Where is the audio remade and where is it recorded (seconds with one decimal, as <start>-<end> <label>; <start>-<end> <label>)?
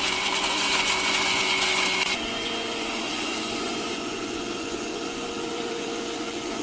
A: 0.0-6.6 remade